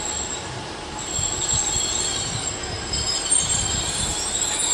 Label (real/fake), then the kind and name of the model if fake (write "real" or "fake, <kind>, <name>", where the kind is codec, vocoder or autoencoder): real